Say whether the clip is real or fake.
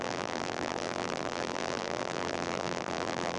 fake